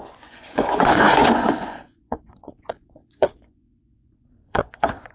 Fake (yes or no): yes